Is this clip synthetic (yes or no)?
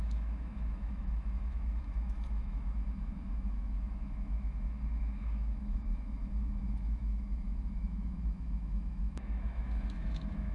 yes